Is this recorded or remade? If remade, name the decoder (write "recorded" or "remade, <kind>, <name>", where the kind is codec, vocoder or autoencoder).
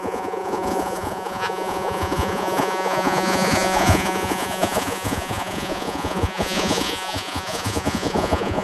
remade, vocoder, Vocos